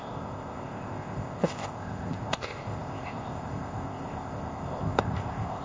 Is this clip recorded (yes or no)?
no